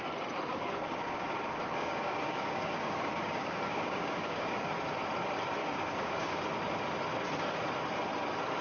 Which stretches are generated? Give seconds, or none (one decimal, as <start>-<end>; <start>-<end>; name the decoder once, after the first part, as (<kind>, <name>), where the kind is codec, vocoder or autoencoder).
0.5-4.7 (codec, DAC); 5.6-6.3